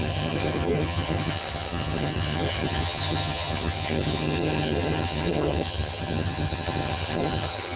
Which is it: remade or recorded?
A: remade